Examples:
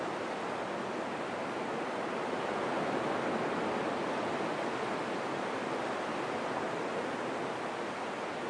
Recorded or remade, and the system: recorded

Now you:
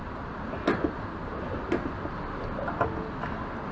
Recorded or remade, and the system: recorded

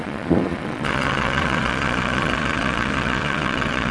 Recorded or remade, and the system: remade, vocoder, Vocos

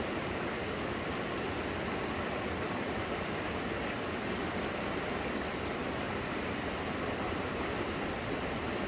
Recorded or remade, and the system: recorded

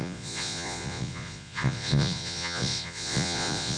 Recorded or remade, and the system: remade, vocoder, Vocos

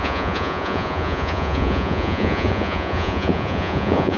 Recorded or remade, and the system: remade, vocoder, Vocos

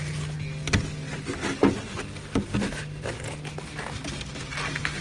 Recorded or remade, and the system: recorded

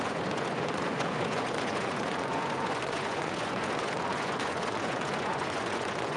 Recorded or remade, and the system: remade, vocoder, Vocos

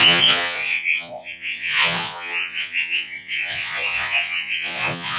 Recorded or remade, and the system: remade, vocoder, Vocos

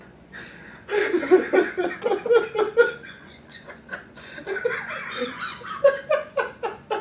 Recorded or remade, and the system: remade, vocoder, Vocos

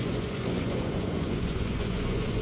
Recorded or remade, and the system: remade, vocoder, Vocos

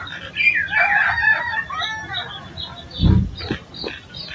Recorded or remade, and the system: recorded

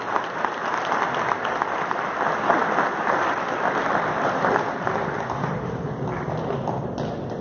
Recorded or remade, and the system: recorded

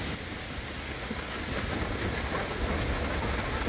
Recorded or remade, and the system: recorded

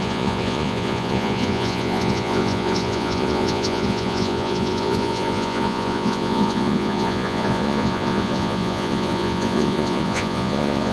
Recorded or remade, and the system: remade, vocoder, Vocos